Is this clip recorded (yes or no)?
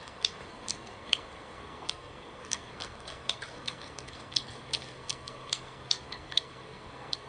no